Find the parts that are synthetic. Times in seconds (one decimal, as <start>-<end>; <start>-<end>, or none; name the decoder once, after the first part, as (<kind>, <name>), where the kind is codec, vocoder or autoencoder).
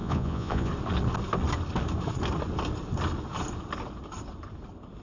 0.0-0.7 (vocoder, Vocos)